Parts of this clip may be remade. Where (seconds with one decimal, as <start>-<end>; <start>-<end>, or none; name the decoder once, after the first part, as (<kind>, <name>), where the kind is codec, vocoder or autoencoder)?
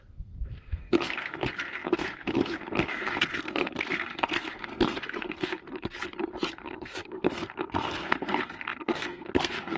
0.0-5.6 (codec, SNAC); 6.5-9.8